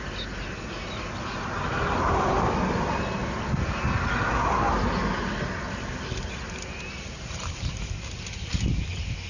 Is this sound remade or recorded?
recorded